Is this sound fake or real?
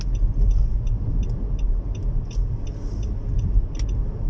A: real